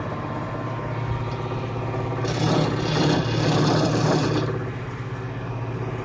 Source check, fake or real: real